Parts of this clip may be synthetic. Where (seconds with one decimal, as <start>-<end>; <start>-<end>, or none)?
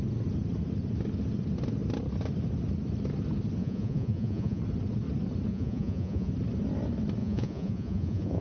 3.6-4.6; 5.5-6.3; 7.2-8.4